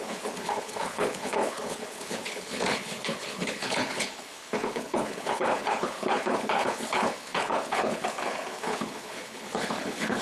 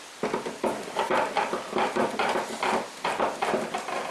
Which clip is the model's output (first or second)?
first